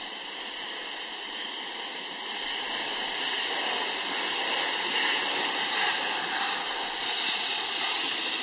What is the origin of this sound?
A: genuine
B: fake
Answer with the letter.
A